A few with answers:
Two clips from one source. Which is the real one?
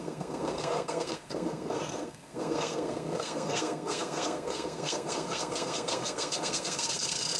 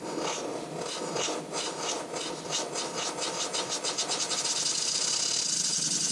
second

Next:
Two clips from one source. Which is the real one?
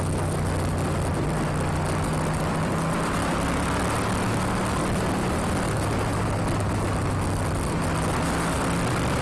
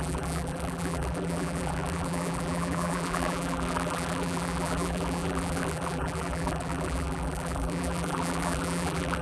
first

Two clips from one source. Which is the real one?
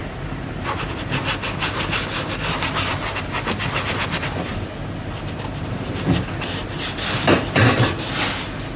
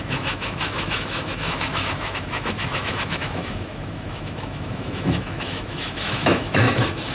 first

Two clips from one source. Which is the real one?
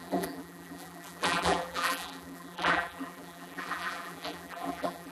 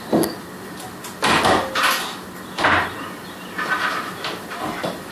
second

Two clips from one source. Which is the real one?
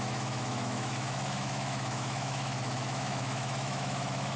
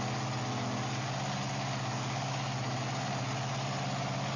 second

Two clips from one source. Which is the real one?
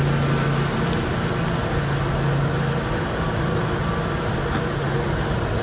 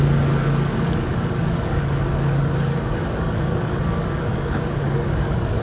first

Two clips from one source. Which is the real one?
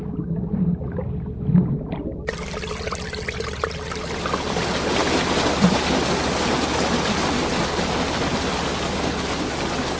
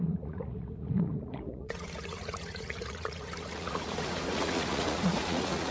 first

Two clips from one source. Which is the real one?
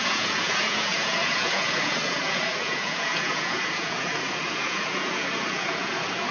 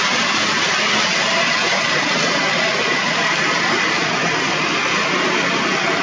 second